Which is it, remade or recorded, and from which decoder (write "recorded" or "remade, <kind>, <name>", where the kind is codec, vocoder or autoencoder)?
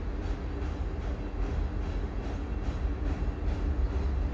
recorded